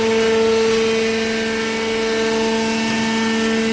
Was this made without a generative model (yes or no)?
yes